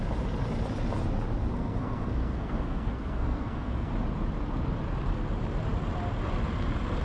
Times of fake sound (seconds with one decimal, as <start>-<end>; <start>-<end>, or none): 1.5-3.9